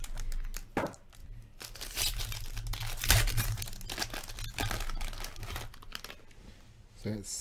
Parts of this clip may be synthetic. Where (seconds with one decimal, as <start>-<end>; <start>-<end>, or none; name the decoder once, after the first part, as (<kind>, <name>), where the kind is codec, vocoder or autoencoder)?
none